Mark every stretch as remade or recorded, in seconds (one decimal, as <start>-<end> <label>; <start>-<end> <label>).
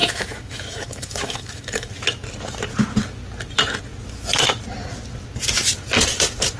0.0-1.9 remade; 1.9-6.6 recorded